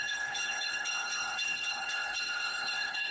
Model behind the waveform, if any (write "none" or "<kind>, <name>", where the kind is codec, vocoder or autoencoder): codec, HILCodec